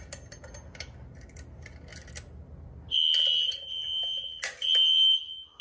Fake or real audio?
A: real